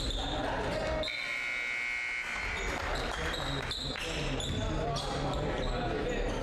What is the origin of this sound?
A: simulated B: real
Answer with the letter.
B